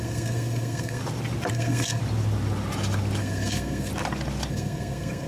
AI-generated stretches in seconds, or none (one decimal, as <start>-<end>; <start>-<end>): 0.0-1.0; 1.5-2.0; 3.2-3.9; 4.5-5.3